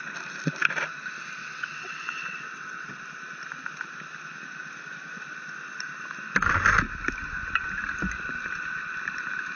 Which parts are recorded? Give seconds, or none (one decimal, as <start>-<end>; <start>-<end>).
0.0-1.4; 2.9-9.6

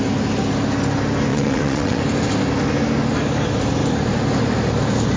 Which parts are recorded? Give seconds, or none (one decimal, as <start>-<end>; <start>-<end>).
0.0-1.3; 2.0-5.2

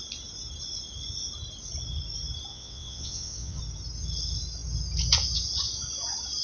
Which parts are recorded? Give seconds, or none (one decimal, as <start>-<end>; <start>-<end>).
0.0-2.5; 3.6-6.4

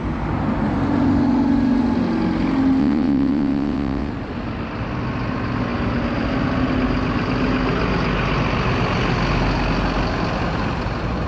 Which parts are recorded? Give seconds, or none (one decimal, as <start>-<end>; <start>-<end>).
0.0-2.8; 4.1-11.3

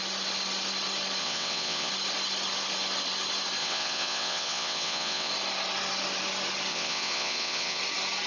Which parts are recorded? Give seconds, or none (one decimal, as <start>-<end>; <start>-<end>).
0.0-1.2; 1.9-3.6; 5.3-6.7; 7.8-8.3

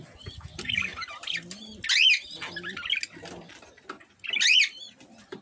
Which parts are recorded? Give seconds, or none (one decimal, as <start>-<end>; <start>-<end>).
0.0-5.4

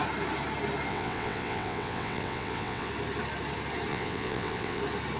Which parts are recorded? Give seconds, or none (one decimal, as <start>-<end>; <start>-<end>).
0.0-0.9; 2.9-3.9; 4.8-5.2

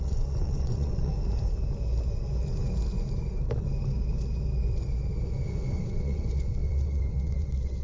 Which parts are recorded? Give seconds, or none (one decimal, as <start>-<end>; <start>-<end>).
1.1-5.8